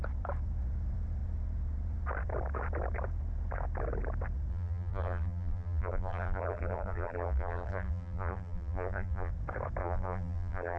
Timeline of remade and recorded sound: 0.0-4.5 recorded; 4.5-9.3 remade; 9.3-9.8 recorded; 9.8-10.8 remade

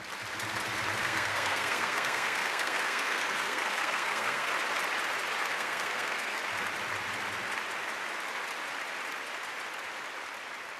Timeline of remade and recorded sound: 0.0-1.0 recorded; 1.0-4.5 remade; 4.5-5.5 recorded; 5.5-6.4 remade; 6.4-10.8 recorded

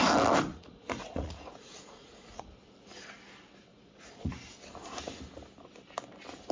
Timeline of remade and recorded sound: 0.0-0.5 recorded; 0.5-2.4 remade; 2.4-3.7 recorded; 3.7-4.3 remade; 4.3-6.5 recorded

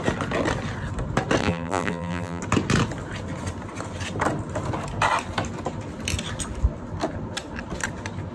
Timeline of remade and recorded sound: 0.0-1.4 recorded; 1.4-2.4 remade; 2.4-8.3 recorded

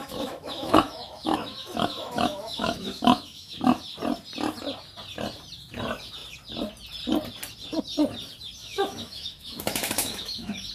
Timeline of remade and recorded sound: 0.0-3.8 remade; 3.8-8.6 recorded; 8.6-10.7 remade

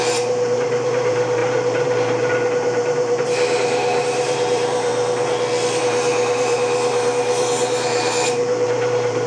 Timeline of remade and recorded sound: 0.0-4.9 remade; 4.9-5.8 recorded; 5.8-9.3 remade

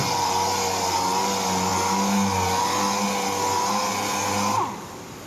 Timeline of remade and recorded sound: 0.0-5.3 recorded

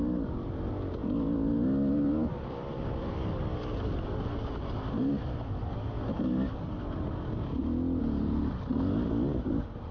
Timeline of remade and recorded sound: 0.0-9.9 recorded